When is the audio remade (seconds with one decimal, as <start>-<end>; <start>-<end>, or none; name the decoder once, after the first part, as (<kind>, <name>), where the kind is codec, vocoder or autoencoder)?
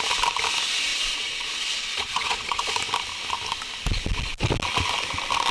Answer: 0.9-2.7 (vocoder, Vocos)